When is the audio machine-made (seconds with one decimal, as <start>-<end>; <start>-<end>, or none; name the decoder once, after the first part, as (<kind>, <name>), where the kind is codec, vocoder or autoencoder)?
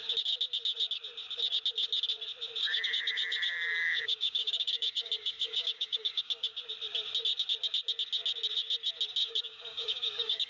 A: 2.6-6.6 (codec, DAC); 9.2-10.5